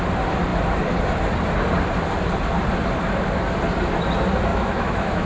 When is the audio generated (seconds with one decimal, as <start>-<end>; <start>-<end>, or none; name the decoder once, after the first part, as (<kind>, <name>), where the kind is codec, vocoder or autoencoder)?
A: 4.5-5.3 (autoencoder, DAC-VAE)